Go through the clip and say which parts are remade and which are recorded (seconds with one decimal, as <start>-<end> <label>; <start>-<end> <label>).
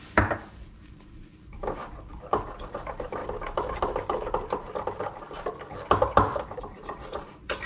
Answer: 0.0-1.8 remade; 1.8-2.6 recorded; 2.6-3.2 remade; 3.2-6.6 recorded; 6.6-7.7 remade